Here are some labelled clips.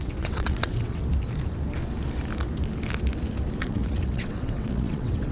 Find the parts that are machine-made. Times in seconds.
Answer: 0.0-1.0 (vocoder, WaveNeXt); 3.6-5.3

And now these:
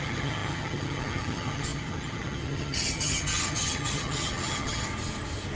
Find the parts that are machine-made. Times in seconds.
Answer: 0.0-4.9 (vocoder, HiFi-GAN)

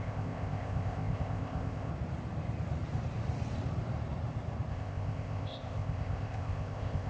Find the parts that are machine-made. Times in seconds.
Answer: 0.0-1.9 (codec, ZipCodec); 4.7-7.1